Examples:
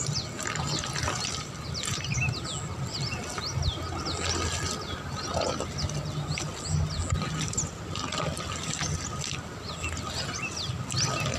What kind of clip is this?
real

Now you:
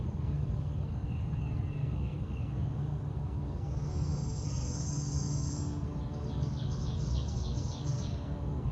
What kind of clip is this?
fake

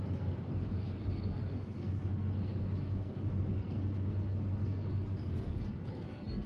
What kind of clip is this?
fake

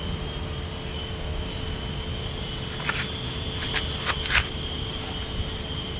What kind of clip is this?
real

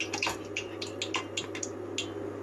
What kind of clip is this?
real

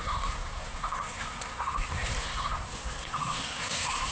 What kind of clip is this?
fake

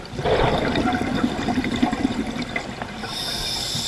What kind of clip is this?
real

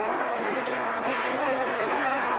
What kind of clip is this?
fake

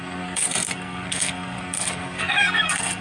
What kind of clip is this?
fake